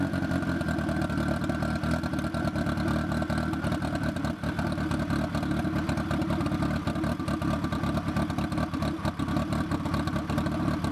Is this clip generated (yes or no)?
no